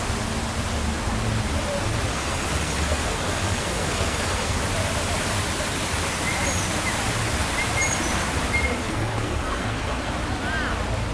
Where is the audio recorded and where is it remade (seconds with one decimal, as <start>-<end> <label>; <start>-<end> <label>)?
0.0-2.1 recorded; 2.1-4.6 remade; 4.6-8.8 recorded; 8.8-10.1 remade; 10.1-11.1 recorded